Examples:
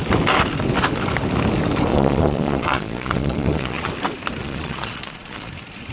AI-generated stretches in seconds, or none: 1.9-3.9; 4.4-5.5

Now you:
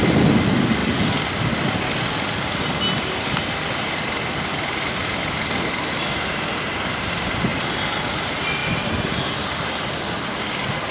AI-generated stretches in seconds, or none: 7.5-8.0; 8.6-9.6

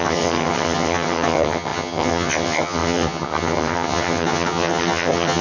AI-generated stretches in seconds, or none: 0.0-5.4

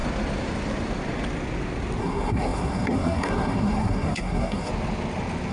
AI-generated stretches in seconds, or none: 2.0-4.7

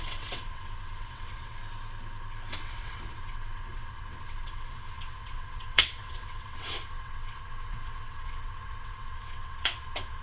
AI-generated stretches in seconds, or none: 0.0-1.6; 2.5-10.2

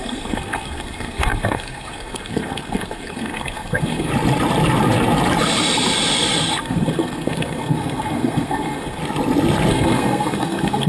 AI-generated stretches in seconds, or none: 0.0-4.1; 6.6-9.0; 9.7-10.9